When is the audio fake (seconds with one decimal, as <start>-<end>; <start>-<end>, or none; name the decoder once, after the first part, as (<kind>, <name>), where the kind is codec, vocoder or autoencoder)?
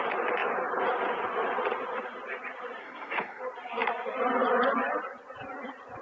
2.8-3.4 (codec, SNAC)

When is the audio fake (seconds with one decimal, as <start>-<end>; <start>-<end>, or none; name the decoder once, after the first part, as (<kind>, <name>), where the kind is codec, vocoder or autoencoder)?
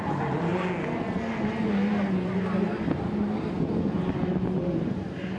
none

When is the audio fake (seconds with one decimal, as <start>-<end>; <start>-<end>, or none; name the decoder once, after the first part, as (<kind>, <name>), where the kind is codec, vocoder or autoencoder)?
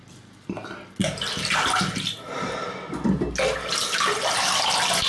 none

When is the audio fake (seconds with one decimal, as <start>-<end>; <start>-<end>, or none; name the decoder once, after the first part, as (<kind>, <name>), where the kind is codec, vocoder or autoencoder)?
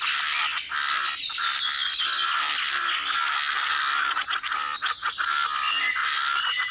none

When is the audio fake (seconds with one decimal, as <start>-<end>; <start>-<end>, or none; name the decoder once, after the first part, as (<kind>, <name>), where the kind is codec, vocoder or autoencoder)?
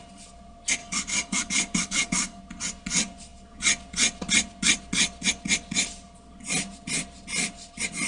0.8-2.4 (codec, DAC)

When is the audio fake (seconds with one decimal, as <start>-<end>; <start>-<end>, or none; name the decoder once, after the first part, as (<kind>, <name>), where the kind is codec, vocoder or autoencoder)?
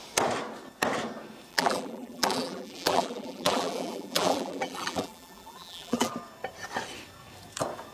1.5-6.1 (vocoder, BigVGAN v2)